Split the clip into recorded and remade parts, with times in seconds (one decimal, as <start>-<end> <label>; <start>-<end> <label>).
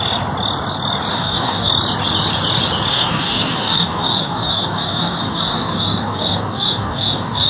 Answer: 0.0-1.1 recorded; 1.1-1.7 remade; 1.7-2.9 recorded; 2.9-7.5 remade